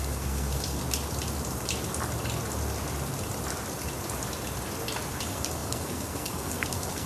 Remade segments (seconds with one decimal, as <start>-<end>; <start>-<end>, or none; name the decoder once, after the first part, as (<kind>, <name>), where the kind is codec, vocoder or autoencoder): 0.0-0.8 (codec, SNAC); 5.1-7.1